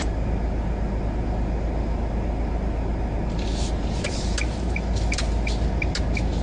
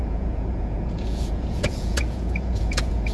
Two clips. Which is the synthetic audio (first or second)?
second